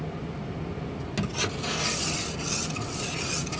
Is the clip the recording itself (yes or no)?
yes